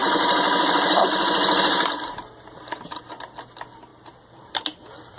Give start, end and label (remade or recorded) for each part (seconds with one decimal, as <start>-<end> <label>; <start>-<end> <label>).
0.0-3.1 remade; 3.1-3.9 recorded; 3.9-4.6 remade; 4.6-5.2 recorded